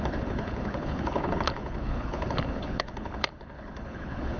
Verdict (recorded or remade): remade